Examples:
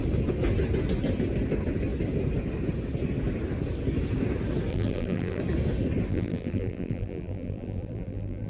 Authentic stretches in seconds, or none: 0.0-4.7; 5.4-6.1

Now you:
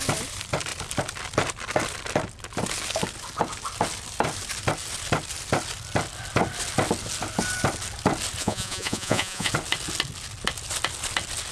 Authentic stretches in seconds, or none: 0.0-8.4; 9.5-11.5

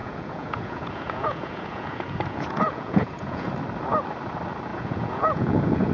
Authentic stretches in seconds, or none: 3.5-4.7

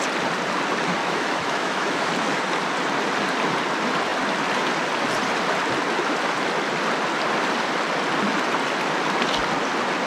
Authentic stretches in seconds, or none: 0.0-1.0; 2.1-10.1